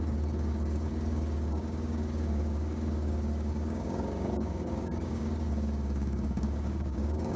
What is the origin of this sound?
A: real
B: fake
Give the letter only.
B